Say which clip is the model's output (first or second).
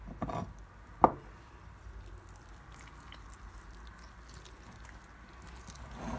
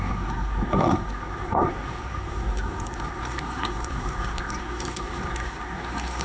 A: second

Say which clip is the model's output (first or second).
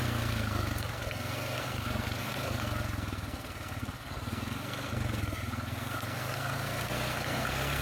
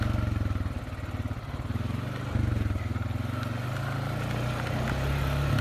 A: first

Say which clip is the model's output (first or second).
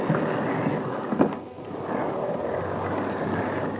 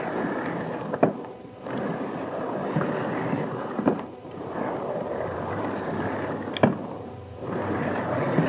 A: second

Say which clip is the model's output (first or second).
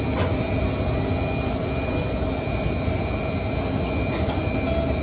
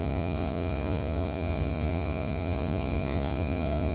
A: second